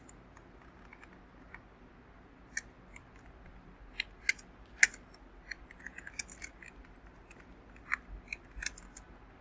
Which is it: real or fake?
real